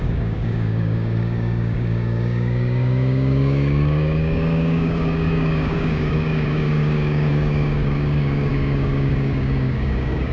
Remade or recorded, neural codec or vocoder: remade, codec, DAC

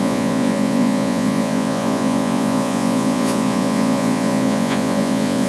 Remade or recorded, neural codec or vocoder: remade, vocoder, Vocos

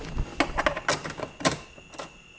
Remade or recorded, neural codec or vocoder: recorded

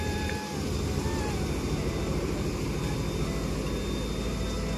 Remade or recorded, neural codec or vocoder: recorded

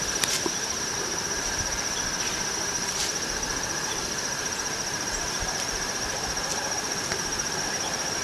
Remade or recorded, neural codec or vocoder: remade, vocoder, BigVGAN v2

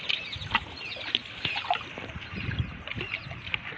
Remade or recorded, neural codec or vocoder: recorded